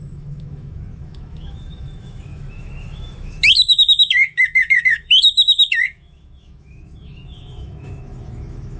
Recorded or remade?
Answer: remade